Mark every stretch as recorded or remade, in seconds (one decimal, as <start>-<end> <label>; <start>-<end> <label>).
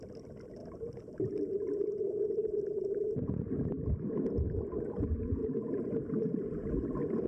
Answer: 0.0-0.6 recorded; 0.6-5.0 remade; 5.0-5.4 recorded; 5.4-7.3 remade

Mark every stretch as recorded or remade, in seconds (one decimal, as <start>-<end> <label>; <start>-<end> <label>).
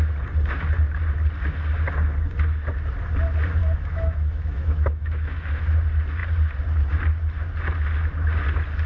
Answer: 0.0-3.6 recorded; 3.6-5.6 remade; 5.6-8.9 recorded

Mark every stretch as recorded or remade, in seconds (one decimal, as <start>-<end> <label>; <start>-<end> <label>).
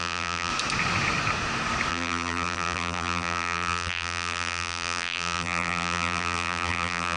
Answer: 0.0-0.5 remade; 0.5-1.9 recorded; 1.9-7.2 remade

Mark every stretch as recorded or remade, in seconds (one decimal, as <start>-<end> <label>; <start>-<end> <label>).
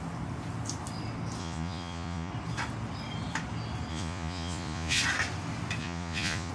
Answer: 0.0-1.4 recorded; 1.4-2.3 remade; 2.3-3.9 recorded; 3.9-5.0 remade; 5.0-5.8 recorded; 5.8-6.5 remade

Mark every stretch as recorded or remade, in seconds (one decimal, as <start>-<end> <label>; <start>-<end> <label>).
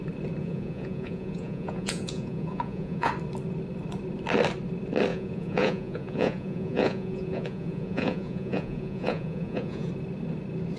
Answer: 0.0-0.4 recorded; 0.4-3.1 remade; 3.1-5.1 recorded; 5.1-9.9 remade; 9.9-10.8 recorded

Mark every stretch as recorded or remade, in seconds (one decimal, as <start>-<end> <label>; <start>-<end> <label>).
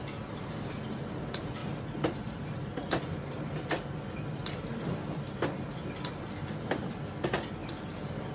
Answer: 0.0-7.6 recorded; 7.6-8.3 remade